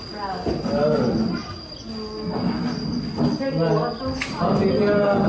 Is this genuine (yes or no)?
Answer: yes